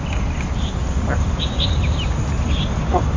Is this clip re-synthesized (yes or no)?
no